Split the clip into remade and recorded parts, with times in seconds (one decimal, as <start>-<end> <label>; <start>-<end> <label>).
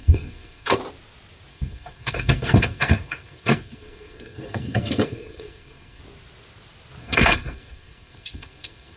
0.0-0.8 remade; 0.8-1.5 recorded; 1.5-6.0 remade; 6.0-7.0 recorded; 7.0-9.0 remade